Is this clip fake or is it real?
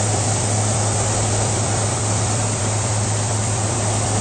fake